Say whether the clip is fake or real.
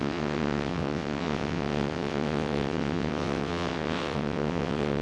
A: fake